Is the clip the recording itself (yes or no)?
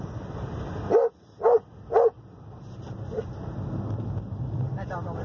yes